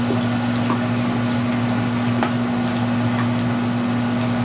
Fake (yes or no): no